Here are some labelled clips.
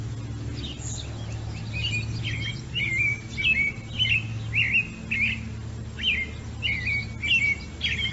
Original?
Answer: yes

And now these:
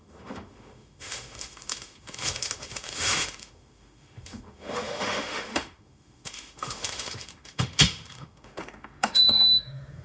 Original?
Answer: no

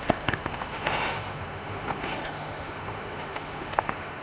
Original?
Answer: no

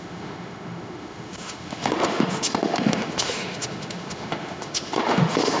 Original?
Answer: no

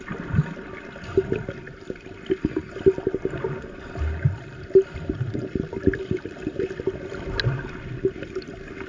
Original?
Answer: yes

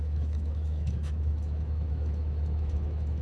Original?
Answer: no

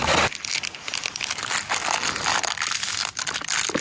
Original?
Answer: yes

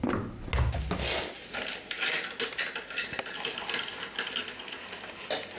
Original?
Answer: yes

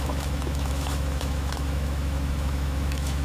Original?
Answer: no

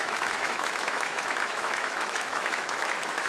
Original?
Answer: no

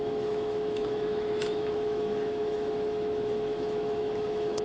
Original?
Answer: no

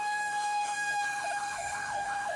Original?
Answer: no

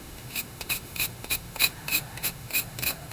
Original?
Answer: no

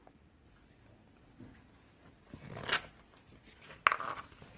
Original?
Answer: yes